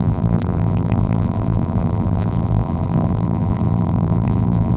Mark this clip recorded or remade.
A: remade